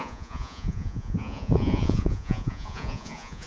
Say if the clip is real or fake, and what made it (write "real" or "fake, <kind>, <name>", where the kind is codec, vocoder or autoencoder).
fake, vocoder, Vocos